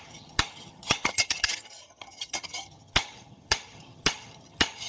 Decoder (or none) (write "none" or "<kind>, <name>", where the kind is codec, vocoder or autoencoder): vocoder, HiFi-GAN